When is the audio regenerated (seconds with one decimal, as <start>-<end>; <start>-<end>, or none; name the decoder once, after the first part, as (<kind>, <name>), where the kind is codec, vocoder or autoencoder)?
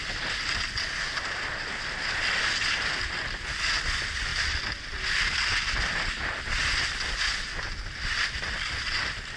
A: none